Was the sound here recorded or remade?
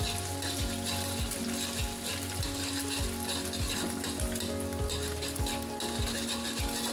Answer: recorded